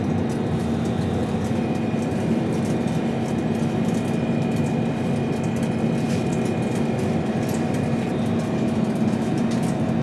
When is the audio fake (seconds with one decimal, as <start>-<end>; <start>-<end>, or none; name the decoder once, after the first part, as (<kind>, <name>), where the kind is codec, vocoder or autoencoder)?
none